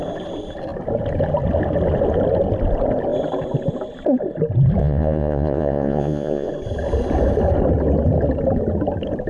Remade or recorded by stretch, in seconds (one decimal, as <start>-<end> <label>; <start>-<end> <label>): 0.0-4.8 recorded; 4.8-6.5 remade; 6.5-9.3 recorded